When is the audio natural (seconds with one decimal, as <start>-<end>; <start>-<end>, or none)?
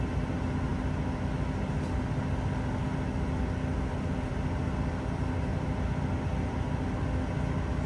0.0-7.9